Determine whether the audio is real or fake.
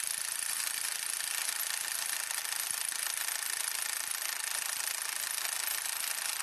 real